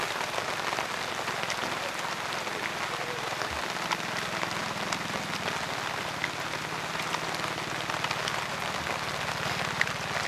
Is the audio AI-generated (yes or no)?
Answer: no